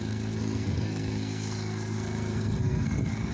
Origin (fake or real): fake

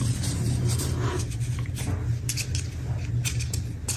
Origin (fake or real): real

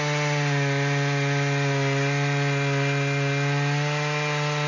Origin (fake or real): real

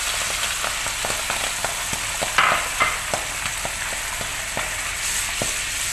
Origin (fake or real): real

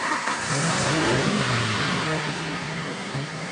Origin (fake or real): fake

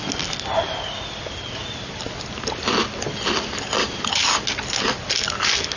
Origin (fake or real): real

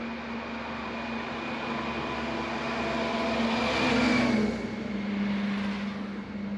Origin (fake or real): real